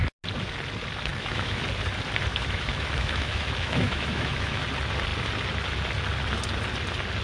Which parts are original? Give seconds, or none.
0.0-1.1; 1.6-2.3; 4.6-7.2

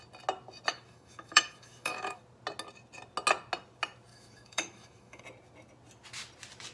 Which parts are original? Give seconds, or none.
0.0-0.7; 2.2-4.1; 5.2-6.7